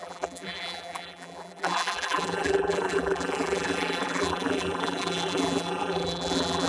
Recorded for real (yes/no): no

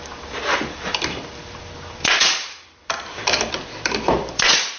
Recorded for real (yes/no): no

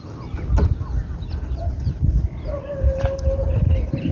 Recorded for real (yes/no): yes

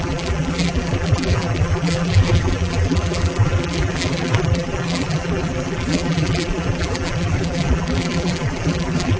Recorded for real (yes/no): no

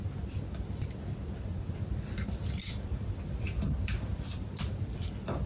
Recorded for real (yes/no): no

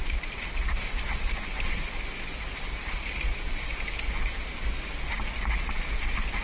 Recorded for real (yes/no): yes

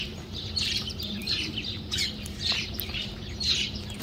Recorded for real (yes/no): no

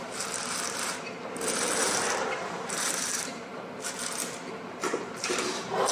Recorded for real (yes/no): no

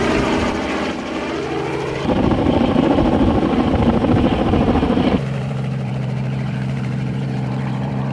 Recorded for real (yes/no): no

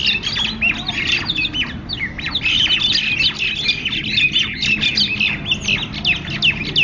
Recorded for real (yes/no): yes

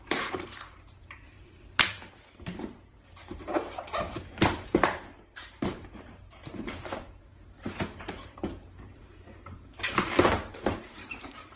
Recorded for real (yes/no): no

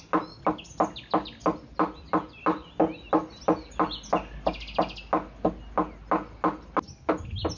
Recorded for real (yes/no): yes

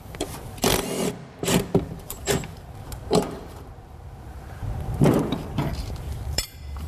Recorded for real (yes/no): no